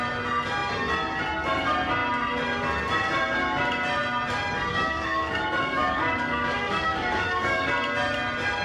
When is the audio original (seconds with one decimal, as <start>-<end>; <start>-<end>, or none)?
0.0-4.7; 7.7-8.6